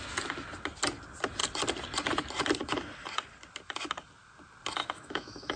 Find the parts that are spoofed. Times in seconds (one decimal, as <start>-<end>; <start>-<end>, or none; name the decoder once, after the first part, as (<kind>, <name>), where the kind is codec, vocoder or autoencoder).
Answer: 4.8-5.6 (autoencoder, DAC-VAE)